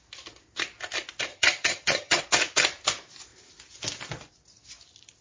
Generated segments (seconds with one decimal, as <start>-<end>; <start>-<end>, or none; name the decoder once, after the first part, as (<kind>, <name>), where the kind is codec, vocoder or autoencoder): 1.3-2.2 (vocoder, HiFi-GAN)